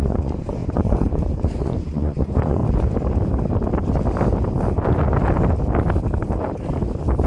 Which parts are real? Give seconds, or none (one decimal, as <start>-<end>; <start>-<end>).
2.6-7.3